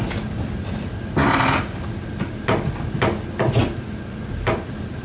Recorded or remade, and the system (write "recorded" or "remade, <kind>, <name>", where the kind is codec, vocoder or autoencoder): recorded